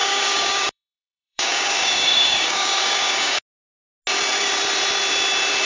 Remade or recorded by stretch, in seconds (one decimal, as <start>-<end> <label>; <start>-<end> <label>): 0.0-3.4 remade; 3.4-5.7 recorded